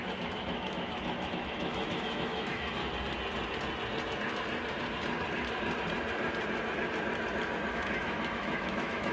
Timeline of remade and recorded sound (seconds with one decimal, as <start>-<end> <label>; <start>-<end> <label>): 0.0-2.8 remade; 2.8-7.7 recorded; 7.7-9.1 remade